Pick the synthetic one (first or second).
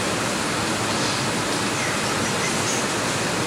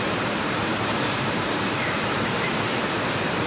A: second